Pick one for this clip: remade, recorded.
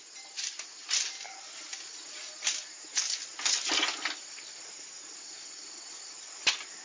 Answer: recorded